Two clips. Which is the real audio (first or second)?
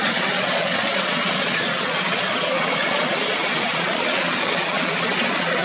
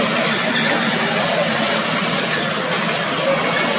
second